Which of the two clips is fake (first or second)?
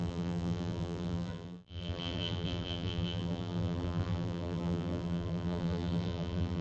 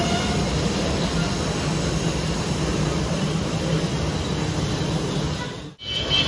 first